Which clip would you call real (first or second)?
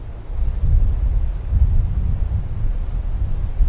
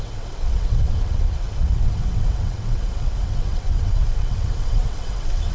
first